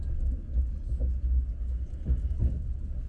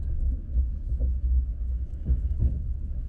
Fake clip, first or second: second